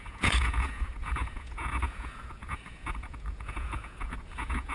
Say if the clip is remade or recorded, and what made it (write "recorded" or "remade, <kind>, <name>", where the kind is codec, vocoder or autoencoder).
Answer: remade, vocoder, Vocos